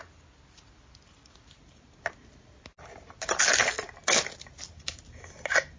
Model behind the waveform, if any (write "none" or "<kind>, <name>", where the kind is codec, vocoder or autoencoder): none